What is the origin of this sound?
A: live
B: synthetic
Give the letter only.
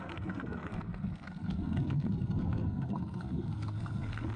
B